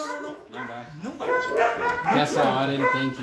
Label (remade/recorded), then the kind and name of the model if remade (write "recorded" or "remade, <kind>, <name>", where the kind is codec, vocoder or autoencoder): remade, autoencoder, DAC-VAE